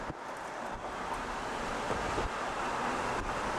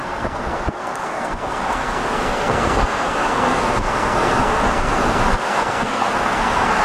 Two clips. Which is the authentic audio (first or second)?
first